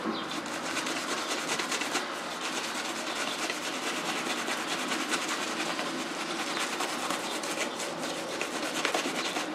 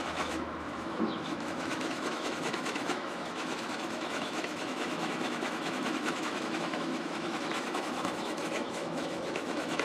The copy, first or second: second